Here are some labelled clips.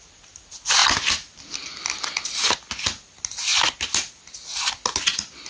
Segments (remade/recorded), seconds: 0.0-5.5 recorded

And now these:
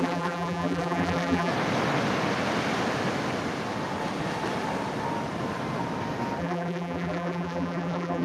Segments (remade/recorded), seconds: 0.0-1.5 remade; 1.5-6.4 recorded; 6.4-8.2 remade

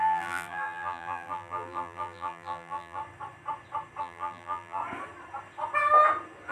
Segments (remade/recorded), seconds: 0.0-3.0 remade; 3.0-4.0 recorded; 4.0-4.8 remade; 4.8-6.5 recorded

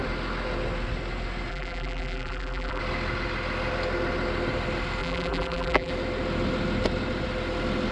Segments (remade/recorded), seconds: 0.0-1.5 recorded; 1.5-2.8 remade; 2.8-5.0 recorded; 5.0-5.9 remade; 5.9-7.9 recorded

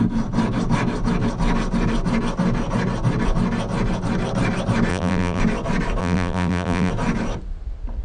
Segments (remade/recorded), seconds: 0.0-4.9 recorded; 4.9-5.4 remade; 5.4-6.0 recorded; 6.0-6.9 remade; 6.9-8.0 recorded

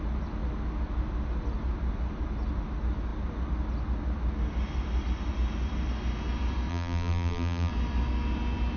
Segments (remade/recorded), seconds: 0.0-6.7 recorded; 6.7-7.7 remade; 7.7-8.8 recorded

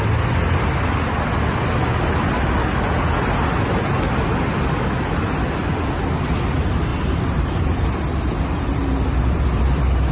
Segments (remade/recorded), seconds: 0.0-6.9 recorded; 6.9-10.1 remade

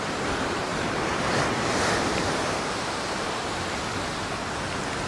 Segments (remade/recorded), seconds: 0.0-0.7 recorded; 0.7-3.8 remade; 3.8-5.1 recorded